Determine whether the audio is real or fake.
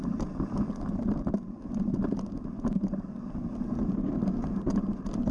real